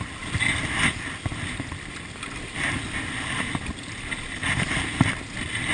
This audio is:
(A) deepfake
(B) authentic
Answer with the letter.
B